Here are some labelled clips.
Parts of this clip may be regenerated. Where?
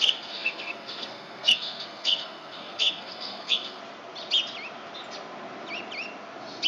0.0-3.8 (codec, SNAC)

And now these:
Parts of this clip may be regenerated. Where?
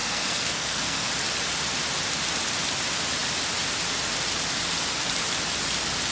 0.0-1.1 (codec, SNAC)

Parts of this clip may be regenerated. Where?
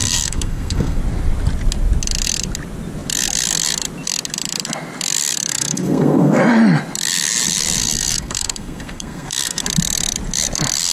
0.0-1.0 (codec, SNAC); 5.5-6.4; 7.8-9.6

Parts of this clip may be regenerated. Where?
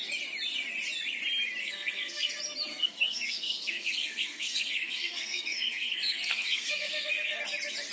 1.6-2.3 (codec, SNAC); 2.7-7.4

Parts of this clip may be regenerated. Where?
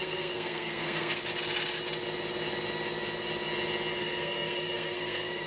0.0-1.2 (codec, SNAC); 4.0-5.5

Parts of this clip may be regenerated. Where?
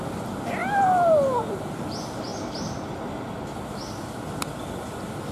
none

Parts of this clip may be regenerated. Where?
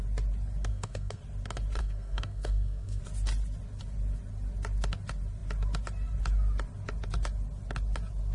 0.7-1.2 (codec, SNAC); 1.8-3.0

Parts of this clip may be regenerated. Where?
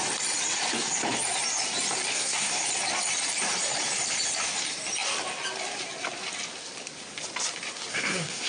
2.1-2.6 (codec, SNAC); 7.9-8.5